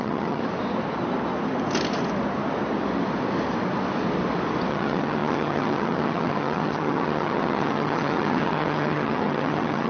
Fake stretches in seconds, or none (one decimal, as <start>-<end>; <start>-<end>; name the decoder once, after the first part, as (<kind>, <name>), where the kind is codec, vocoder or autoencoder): 0.0-0.4 (vocoder, HiFi-GAN); 4.7-9.9